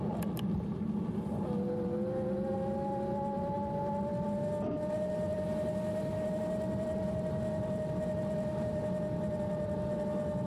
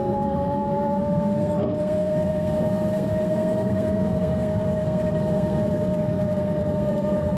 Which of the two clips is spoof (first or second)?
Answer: second